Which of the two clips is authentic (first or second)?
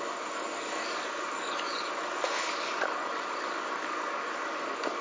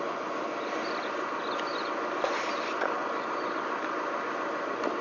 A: second